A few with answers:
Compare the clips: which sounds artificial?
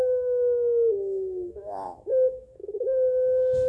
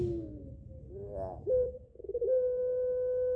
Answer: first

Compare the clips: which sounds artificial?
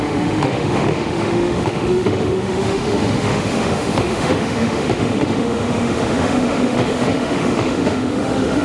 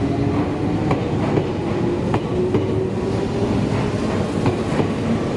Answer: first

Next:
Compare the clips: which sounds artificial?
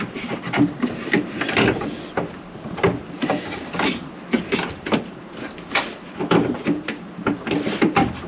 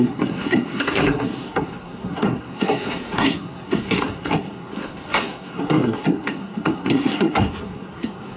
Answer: second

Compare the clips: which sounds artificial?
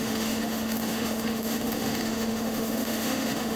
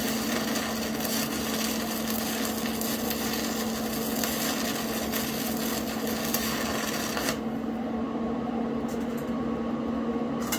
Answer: first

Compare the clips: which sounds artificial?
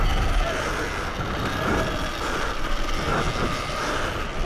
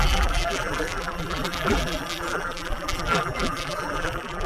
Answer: second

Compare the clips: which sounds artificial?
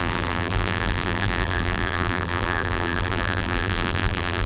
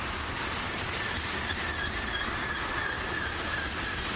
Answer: first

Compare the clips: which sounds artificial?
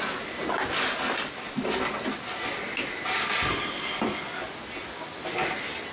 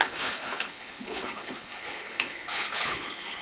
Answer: second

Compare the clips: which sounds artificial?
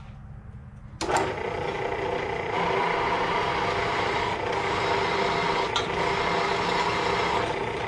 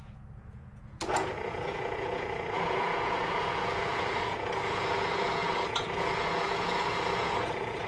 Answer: second